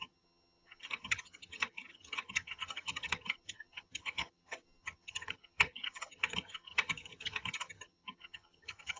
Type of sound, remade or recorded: remade